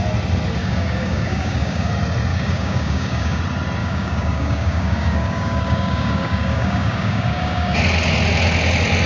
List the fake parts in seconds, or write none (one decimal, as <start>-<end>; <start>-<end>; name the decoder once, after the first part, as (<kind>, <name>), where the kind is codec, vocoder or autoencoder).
0.6-1.9 (codec, DAC); 2.3-3.4; 3.8-7.8